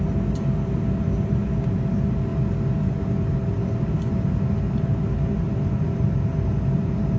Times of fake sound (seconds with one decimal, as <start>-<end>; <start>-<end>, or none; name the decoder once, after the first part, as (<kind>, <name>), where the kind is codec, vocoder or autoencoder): none